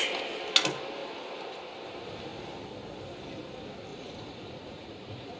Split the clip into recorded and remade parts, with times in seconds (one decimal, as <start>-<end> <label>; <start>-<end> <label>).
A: 0.0-3.9 recorded; 3.9-5.4 remade